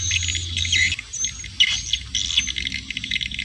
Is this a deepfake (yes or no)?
no